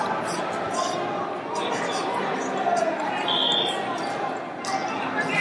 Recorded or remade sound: recorded